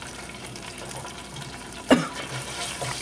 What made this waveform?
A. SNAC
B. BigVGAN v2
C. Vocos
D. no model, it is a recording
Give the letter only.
B